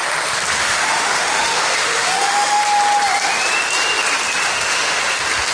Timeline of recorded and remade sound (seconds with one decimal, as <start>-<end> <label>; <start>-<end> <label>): 0.0-0.6 recorded; 0.6-2.6 remade; 2.6-4.5 recorded; 4.5-5.0 remade; 5.0-5.5 recorded